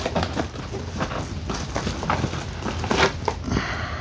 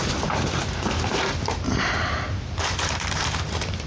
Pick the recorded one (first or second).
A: first